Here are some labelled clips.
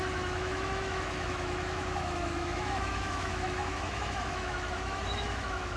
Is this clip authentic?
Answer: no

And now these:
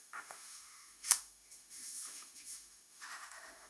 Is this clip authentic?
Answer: no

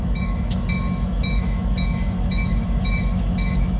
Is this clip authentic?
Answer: no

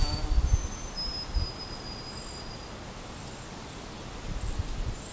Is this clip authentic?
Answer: yes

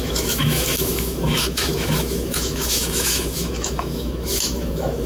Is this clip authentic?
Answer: no